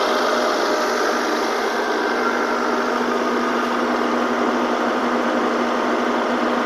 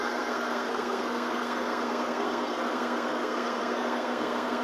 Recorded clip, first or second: first